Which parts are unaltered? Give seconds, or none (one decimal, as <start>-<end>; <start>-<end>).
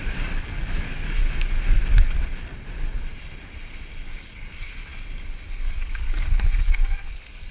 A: 1.2-4.5; 4.9-5.5